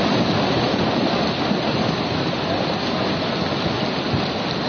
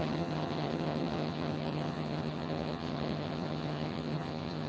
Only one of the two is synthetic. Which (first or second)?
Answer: second